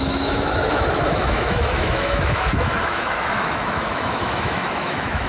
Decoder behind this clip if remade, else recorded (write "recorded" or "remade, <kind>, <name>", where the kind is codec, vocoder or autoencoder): remade, autoencoder, DAC-VAE